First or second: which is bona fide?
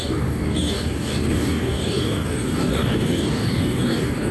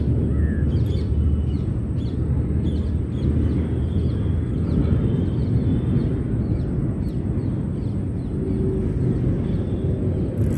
second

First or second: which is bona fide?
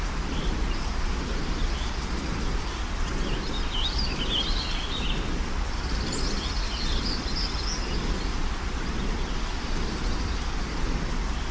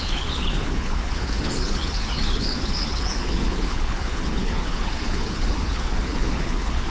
first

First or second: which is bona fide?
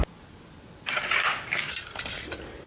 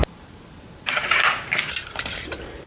first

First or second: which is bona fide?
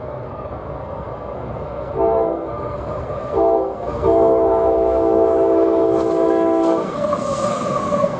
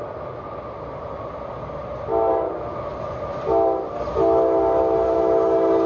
second